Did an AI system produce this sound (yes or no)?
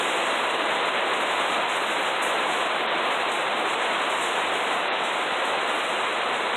no